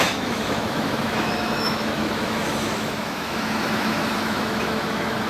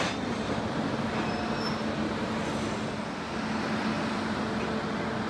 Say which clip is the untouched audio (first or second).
second